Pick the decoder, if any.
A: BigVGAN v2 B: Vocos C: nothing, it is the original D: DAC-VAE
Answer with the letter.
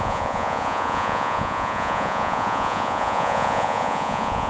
B